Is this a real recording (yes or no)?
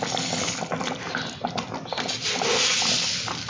yes